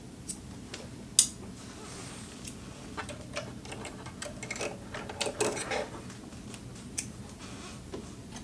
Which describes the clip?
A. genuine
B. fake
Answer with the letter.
A